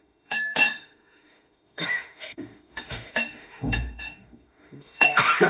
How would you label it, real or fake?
fake